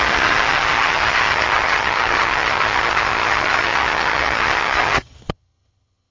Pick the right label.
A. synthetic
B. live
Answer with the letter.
A